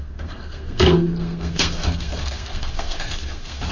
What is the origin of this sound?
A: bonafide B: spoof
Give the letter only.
B